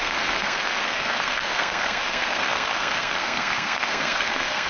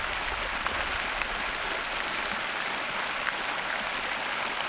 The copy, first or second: first